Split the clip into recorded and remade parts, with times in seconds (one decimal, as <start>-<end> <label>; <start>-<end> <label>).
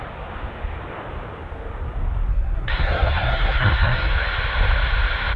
0.0-2.3 recorded; 2.3-4.1 remade; 4.1-5.4 recorded